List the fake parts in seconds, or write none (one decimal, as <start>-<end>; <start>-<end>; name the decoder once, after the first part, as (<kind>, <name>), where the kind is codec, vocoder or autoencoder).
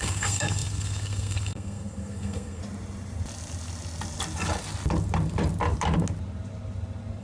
0.0-2.6 (codec, SNAC)